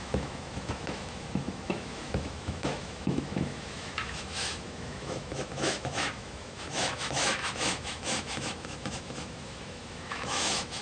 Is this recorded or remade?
remade